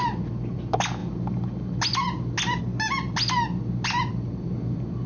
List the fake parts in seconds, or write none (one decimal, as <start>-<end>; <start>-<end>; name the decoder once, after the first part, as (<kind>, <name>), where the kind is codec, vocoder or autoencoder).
none